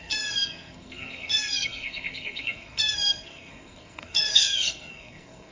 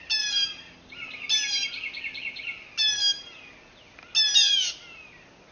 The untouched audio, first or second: second